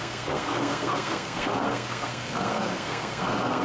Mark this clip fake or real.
fake